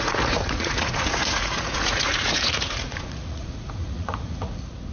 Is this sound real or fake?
fake